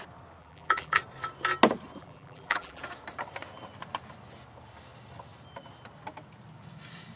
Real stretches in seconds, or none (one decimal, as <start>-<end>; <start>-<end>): 0.0-0.4; 1.0-2.0; 2.8-7.2